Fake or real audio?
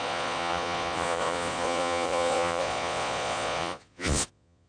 fake